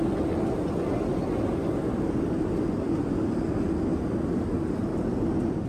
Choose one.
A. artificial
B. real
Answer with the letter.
B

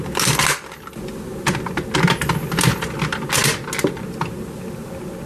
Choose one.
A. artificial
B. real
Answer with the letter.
B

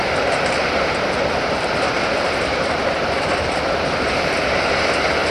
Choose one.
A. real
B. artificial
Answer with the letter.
B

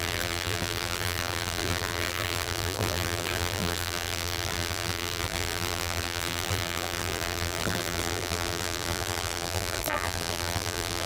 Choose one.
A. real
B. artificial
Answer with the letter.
B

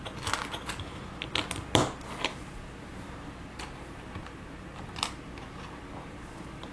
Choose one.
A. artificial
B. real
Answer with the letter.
B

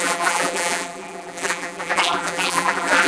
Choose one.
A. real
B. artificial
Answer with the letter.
B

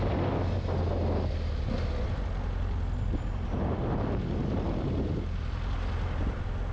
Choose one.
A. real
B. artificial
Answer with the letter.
A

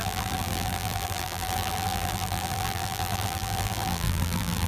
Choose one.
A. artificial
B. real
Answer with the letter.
A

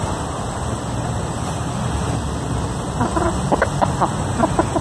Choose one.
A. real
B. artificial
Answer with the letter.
B